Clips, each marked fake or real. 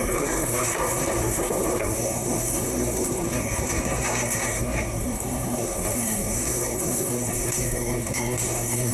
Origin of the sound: fake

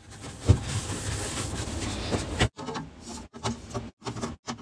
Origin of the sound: real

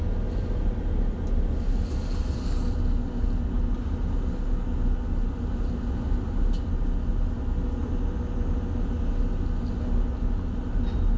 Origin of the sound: real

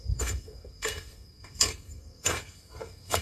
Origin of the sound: fake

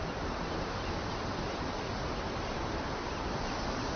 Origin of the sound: real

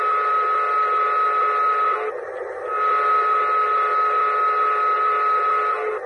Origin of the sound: real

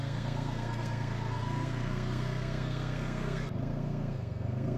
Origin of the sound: fake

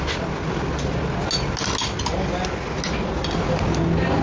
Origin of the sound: real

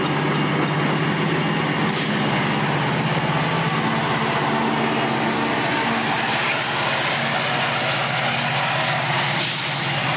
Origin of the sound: real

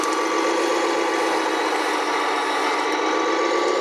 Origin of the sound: real